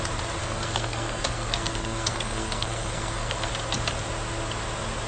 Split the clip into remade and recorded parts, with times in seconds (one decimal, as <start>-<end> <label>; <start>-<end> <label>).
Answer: 0.0-0.4 recorded; 0.4-3.5 remade; 3.5-5.1 recorded